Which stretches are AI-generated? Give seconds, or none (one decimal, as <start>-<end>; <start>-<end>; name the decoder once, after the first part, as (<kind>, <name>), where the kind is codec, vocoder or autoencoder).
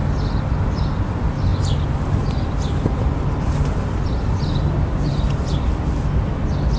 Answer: none